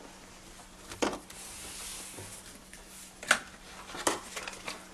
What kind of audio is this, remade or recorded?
recorded